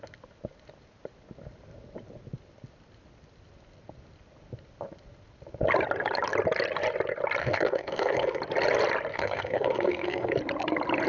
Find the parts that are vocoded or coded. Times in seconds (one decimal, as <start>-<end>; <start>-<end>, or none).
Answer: 7.4-8.4; 9.1-10.4